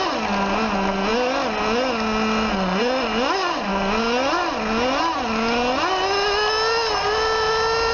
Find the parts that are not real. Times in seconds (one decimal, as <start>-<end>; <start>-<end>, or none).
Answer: none